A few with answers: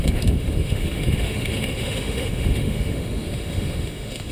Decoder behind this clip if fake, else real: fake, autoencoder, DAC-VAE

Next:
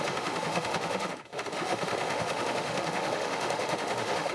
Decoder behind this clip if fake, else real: fake, autoencoder, DAC-VAE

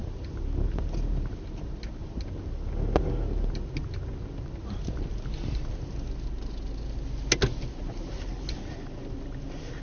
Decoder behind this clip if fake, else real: real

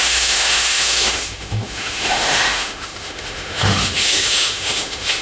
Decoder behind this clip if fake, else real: fake, autoencoder, DAC-VAE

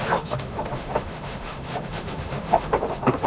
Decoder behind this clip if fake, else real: fake, autoencoder, DAC-VAE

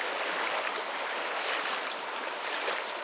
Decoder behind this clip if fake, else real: real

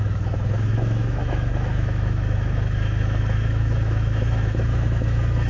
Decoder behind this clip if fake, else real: fake, autoencoder, DAC-VAE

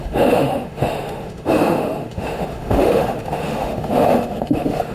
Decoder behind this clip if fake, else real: fake, autoencoder, DAC-VAE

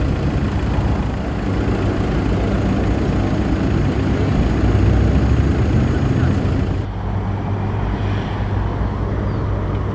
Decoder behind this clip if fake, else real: real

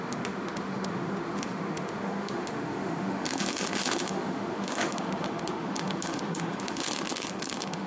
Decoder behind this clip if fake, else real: fake, autoencoder, DAC-VAE